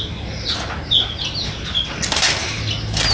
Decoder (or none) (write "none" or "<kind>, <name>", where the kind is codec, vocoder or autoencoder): none